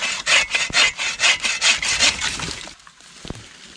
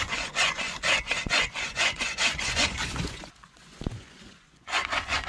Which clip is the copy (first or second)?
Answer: second